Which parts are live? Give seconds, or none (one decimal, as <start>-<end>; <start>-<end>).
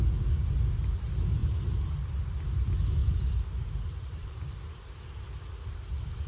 0.0-1.4; 2.3-3.0; 4.6-6.3